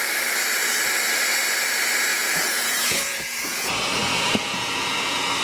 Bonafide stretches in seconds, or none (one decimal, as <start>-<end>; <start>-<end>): 0.0-2.1